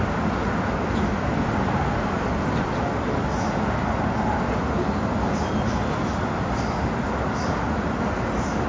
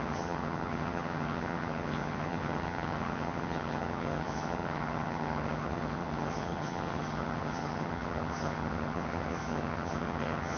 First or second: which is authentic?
first